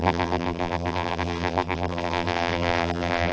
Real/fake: fake